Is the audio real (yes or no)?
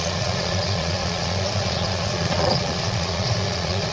no